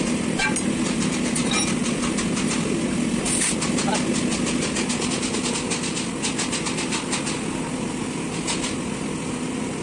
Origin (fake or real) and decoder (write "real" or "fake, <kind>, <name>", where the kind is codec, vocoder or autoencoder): real